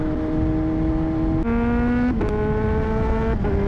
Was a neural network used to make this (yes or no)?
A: no